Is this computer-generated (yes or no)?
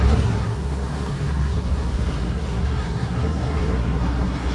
yes